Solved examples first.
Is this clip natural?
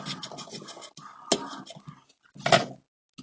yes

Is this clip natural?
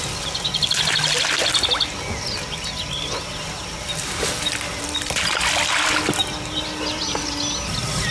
yes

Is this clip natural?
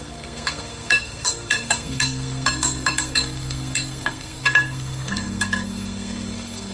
no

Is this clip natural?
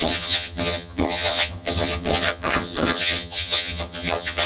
no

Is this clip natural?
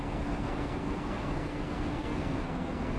no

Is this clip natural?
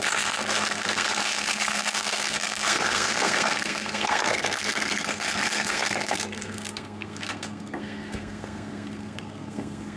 no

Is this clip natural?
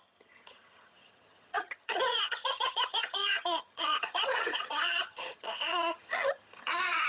no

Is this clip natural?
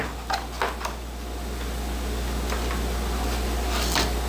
yes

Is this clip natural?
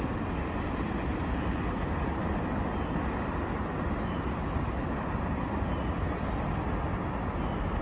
yes